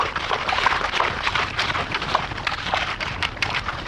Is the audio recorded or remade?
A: remade